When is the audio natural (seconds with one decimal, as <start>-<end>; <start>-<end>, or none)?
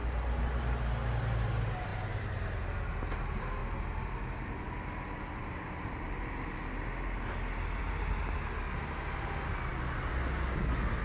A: 0.0-11.0